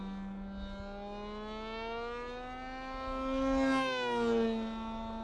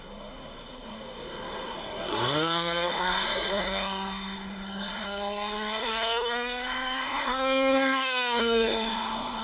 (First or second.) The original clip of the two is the first